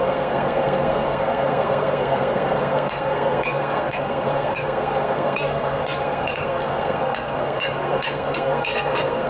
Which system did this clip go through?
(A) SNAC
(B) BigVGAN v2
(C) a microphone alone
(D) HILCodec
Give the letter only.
A